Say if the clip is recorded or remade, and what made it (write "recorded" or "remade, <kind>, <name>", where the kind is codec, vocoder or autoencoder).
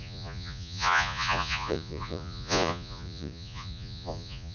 remade, vocoder, Vocos